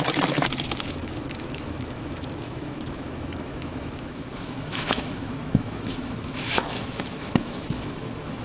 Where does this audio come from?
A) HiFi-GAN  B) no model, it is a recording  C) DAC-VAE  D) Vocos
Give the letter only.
C